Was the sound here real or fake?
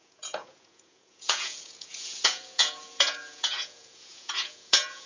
fake